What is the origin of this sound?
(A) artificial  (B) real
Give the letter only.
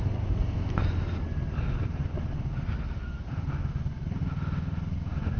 B